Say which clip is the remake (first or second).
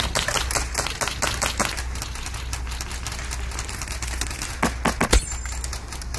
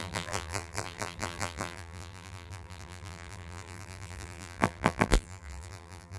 second